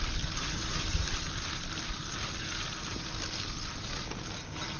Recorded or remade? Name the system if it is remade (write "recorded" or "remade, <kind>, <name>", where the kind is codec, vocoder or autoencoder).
recorded